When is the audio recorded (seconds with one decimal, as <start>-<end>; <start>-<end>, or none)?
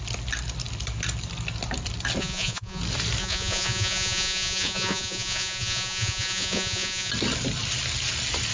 0.0-2.2; 2.8-3.2; 7.1-8.5